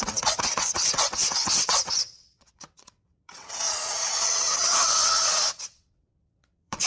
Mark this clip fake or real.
fake